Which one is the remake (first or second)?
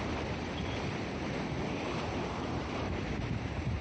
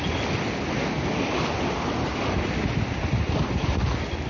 first